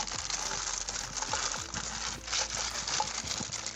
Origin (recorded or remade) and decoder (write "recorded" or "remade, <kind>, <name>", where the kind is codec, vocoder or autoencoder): recorded